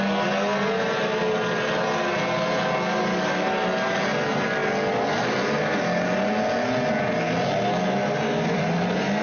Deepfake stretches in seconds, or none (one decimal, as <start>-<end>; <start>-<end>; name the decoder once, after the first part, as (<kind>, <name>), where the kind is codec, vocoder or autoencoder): none